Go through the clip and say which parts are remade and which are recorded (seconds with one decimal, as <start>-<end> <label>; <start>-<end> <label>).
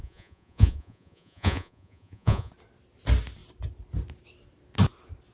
0.0-2.5 remade; 2.5-5.3 recorded